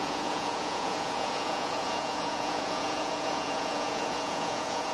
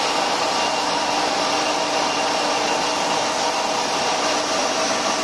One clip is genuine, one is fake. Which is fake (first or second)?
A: first